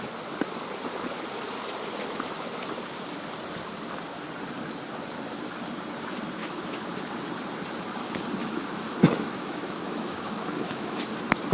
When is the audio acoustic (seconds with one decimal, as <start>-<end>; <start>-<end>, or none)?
0.0-6.4; 6.9-8.4; 11.1-11.5